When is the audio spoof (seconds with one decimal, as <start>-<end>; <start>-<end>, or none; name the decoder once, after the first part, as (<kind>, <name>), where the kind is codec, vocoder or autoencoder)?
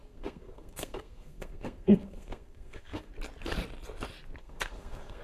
0.0-3.1 (codec, SNAC); 4.4-5.2